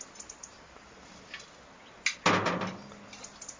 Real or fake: real